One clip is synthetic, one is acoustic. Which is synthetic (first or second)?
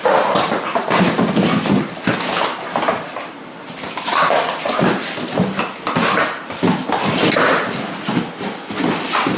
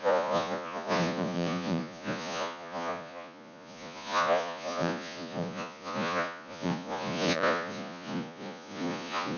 second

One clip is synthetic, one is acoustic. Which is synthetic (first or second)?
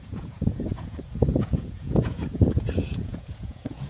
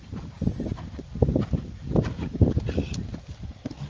first